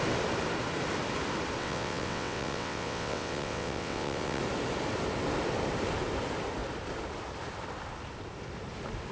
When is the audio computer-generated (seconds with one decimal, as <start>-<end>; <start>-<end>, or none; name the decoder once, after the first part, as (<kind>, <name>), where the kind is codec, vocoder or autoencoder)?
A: 1.6-4.4 (vocoder, WaveNeXt)